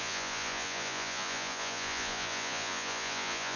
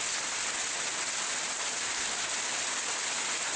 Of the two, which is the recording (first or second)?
second